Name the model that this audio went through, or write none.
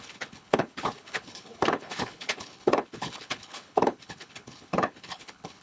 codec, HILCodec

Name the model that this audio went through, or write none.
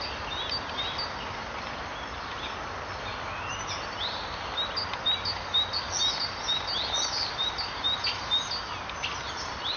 none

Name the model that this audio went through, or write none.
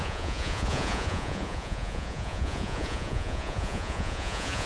vocoder, Vocos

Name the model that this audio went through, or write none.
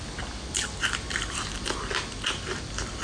none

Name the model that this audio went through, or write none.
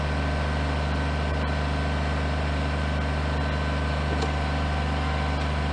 none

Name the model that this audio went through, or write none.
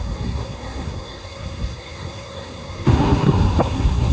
codec, SNAC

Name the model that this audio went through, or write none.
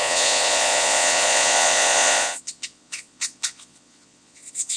vocoder, Vocos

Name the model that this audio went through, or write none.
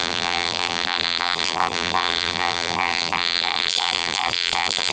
vocoder, BigVGAN v2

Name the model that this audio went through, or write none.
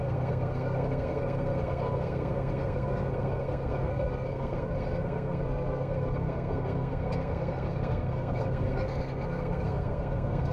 codec, SNAC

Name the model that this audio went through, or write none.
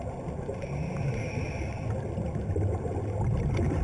none